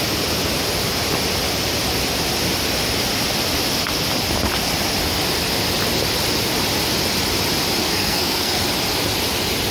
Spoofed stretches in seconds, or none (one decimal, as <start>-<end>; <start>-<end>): 7.8-8.6